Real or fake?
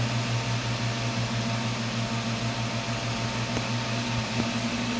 real